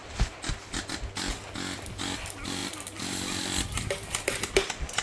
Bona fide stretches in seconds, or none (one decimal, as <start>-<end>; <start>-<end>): 0.0-5.0